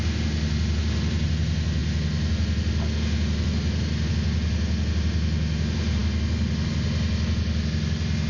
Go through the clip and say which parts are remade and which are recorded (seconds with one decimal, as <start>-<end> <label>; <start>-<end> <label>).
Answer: 0.0-8.3 recorded